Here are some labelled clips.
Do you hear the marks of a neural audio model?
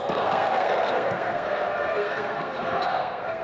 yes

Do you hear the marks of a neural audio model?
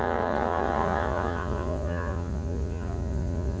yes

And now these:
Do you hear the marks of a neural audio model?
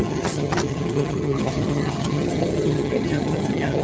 yes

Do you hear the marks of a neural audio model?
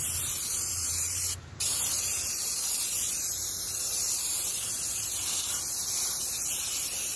yes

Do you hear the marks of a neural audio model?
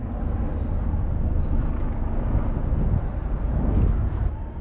no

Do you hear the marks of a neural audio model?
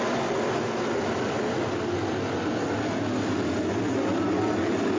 no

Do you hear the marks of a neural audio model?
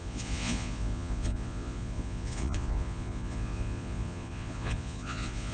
yes